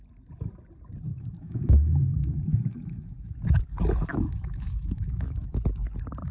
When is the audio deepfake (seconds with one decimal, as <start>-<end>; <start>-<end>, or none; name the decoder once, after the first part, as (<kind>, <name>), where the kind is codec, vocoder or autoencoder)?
1.1-3.3 (autoencoder, DAC-VAE); 4.1-5.6